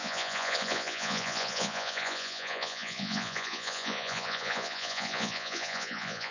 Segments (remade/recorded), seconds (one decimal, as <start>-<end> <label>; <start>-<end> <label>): 0.0-6.3 remade